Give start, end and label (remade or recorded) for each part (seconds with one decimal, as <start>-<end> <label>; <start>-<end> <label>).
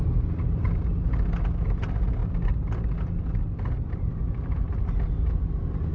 0.0-5.9 recorded